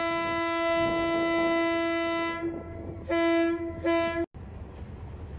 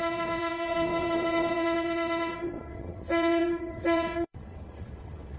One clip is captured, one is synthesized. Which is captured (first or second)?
first